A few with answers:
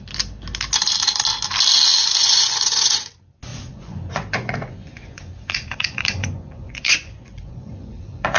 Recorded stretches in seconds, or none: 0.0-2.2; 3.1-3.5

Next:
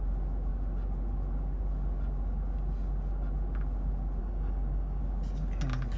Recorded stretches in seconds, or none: 0.0-4.2; 5.0-6.0

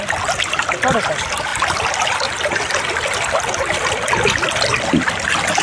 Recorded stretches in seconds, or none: 0.0-5.6

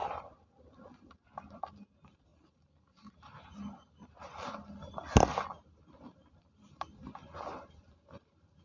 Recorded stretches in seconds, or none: 0.0-8.6